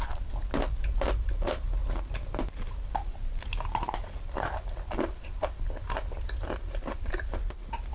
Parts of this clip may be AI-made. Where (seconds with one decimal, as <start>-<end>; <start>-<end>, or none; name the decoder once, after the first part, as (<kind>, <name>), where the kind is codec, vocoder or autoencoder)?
none